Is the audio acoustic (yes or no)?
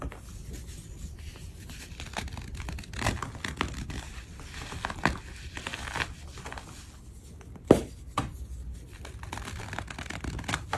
yes